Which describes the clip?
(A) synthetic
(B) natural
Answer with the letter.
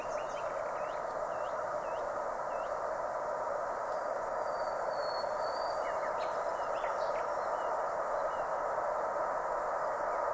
B